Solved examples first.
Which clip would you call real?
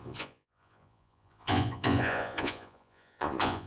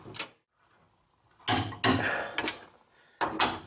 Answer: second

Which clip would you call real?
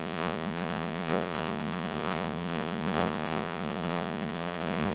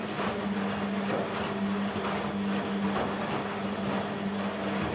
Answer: second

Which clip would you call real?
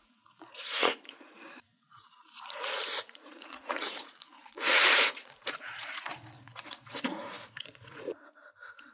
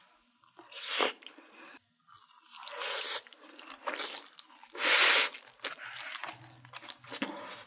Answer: second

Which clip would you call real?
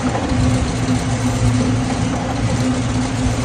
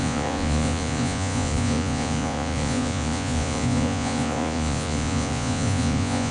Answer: first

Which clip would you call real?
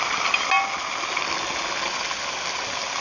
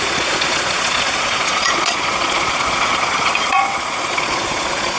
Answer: first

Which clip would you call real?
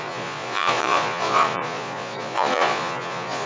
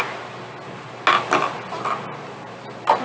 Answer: second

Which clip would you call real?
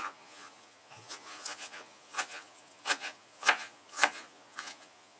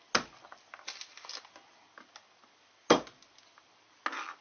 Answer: second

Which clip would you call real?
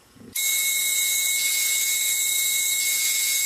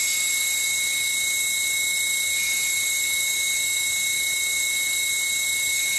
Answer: second